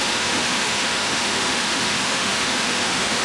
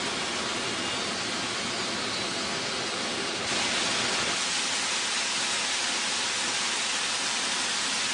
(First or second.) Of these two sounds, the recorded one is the second